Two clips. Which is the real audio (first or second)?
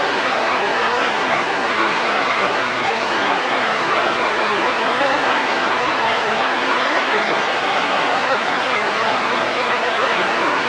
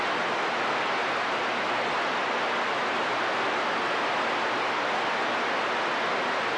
second